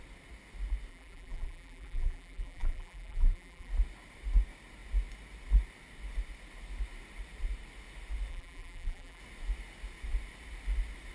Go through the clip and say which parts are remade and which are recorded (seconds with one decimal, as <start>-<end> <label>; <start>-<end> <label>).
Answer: 0.0-0.9 recorded; 0.9-3.7 remade; 3.7-8.3 recorded; 8.3-9.2 remade; 9.2-11.1 recorded